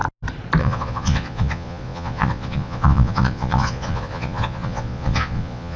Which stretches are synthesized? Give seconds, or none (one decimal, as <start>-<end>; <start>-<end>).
0.6-5.8

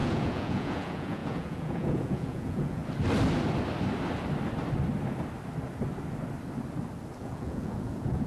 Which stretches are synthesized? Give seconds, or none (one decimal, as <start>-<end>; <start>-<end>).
0.0-2.8; 7.2-8.3

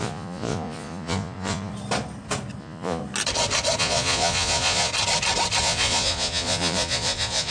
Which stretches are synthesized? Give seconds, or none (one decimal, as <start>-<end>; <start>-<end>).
0.0-1.7; 2.6-3.0; 3.8-4.9; 5.6-7.5

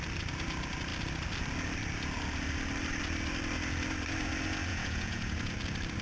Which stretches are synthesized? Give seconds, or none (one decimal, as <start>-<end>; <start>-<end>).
4.7-5.5

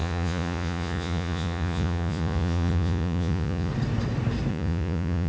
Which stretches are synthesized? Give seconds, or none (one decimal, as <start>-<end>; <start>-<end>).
0.0-3.7; 4.5-5.3

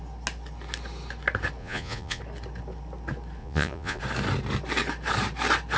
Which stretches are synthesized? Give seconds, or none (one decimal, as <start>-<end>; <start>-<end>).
1.6-2.2; 3.4-4.0